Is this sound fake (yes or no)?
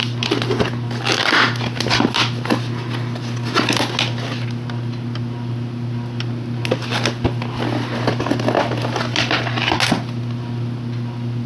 no